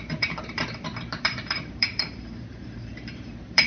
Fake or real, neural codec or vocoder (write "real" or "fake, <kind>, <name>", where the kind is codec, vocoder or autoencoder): fake, vocoder, BigVGAN v2